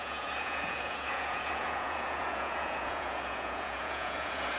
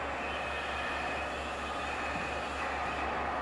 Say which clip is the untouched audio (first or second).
second